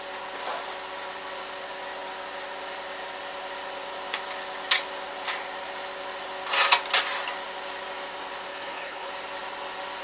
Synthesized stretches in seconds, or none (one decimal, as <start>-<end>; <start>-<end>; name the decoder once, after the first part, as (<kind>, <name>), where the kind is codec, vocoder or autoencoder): 8.5-9.1 (codec, HILCodec)